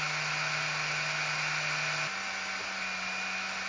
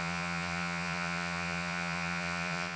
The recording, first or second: first